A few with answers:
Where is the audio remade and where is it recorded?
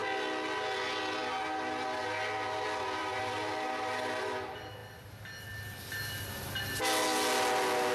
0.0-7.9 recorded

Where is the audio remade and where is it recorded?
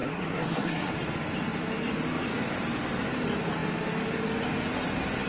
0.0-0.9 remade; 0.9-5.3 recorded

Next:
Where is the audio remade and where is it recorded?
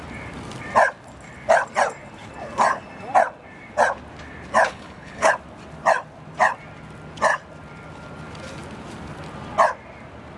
0.0-4.7 recorded; 4.7-5.3 remade; 5.3-10.4 recorded